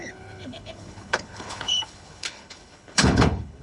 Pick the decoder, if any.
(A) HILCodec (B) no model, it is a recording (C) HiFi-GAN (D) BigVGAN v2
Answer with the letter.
A